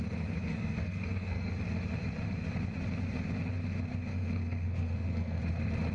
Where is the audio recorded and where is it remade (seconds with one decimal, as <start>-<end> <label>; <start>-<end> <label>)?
0.0-0.5 recorded; 0.5-1.5 remade; 1.5-4.1 recorded; 4.1-5.4 remade; 5.4-5.9 recorded